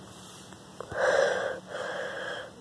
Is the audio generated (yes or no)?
no